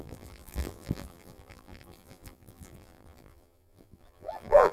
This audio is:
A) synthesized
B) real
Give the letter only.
A